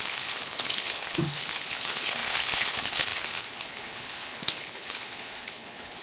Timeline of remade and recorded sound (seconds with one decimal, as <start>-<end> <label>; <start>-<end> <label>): 0.0-6.0 remade